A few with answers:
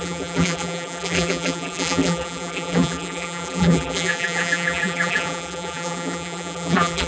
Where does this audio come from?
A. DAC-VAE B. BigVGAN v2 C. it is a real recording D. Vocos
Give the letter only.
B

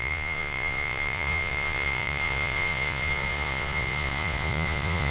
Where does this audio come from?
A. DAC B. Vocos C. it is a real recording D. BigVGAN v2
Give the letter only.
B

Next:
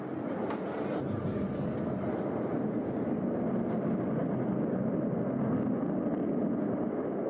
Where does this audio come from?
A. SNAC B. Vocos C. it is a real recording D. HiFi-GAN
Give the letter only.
C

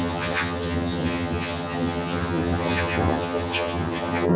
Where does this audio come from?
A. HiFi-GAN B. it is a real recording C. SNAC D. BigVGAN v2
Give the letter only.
A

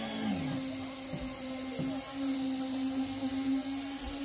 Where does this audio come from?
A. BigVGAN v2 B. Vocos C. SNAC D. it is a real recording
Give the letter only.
D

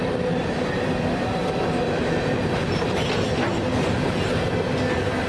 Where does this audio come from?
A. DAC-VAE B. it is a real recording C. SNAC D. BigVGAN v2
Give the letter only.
B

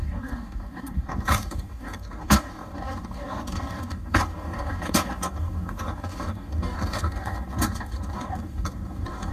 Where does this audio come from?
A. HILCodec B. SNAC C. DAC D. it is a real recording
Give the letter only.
C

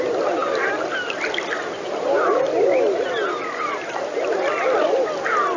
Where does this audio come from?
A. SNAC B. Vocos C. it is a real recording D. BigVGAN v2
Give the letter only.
C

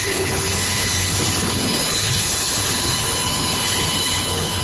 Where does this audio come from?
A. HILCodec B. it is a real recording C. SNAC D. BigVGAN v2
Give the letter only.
A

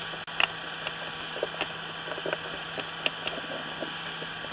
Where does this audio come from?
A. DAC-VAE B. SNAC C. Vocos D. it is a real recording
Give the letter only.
D